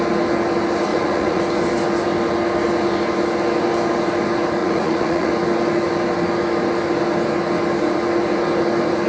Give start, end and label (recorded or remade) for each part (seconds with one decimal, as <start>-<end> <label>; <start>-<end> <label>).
0.0-0.9 recorded; 0.9-1.4 remade; 1.4-4.6 recorded; 4.6-5.3 remade; 5.3-9.1 recorded